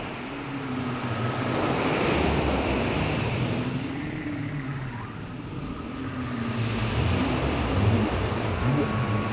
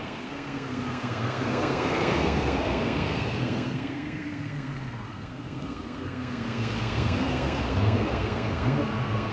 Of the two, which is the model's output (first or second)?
second